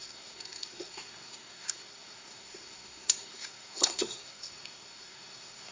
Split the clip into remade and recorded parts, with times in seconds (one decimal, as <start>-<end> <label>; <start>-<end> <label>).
0.0-5.7 remade